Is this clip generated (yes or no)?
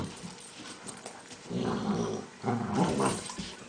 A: yes